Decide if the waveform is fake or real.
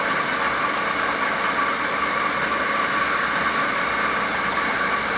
real